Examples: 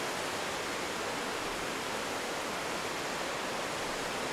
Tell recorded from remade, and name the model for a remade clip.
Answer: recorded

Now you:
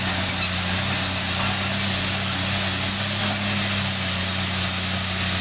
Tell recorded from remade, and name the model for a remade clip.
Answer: recorded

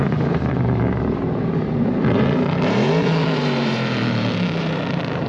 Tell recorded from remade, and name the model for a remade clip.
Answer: remade, vocoder, BigVGAN v2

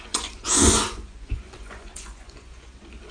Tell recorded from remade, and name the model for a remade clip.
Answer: remade, vocoder, Vocos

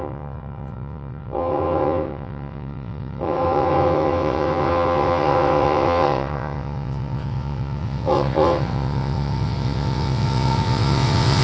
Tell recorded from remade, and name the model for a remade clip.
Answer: remade, vocoder, WaveNeXt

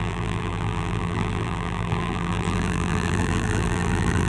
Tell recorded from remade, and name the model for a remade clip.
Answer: remade, vocoder, BigVGAN v2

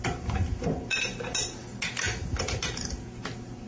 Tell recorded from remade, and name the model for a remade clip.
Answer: recorded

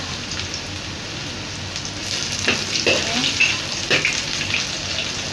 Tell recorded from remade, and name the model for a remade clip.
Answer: recorded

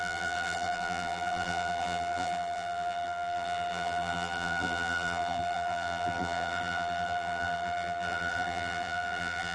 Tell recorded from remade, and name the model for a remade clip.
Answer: remade, vocoder, BigVGAN v2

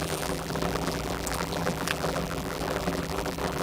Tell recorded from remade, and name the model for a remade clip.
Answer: remade, vocoder, BigVGAN v2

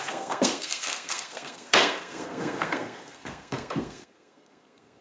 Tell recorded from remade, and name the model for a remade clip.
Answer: remade, codec, SNAC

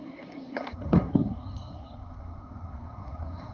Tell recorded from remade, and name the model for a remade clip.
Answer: remade, codec, SNAC